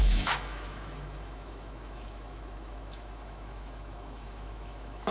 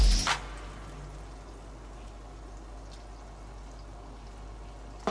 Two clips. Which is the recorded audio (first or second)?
second